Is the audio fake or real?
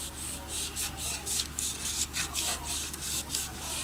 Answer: fake